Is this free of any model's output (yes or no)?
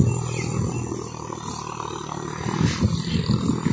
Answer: yes